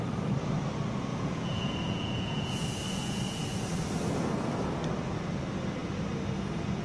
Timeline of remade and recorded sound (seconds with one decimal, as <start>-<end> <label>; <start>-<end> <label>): 0.0-1.1 recorded; 1.1-3.4 remade; 3.4-6.8 recorded